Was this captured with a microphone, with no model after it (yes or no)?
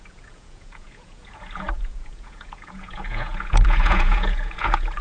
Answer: no